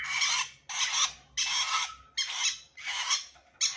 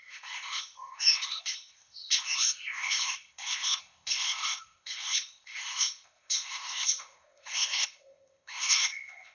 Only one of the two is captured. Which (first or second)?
first